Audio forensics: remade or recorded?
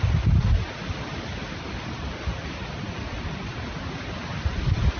recorded